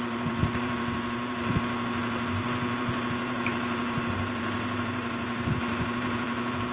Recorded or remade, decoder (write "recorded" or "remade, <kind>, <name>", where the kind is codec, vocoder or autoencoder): remade, vocoder, BigVGAN v2